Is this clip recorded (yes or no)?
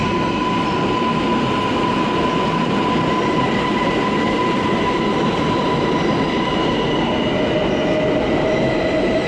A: yes